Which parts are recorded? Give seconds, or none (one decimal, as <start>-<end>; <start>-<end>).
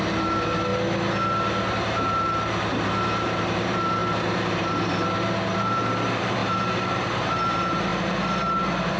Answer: 0.7-1.7